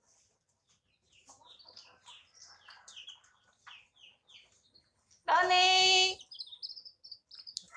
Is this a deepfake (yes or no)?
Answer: no